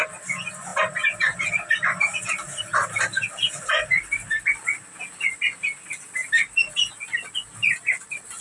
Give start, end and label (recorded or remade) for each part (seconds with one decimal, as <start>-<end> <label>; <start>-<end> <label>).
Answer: 0.0-8.4 recorded